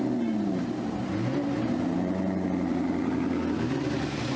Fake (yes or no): no